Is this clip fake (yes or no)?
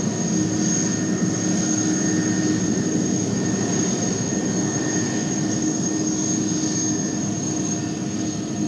no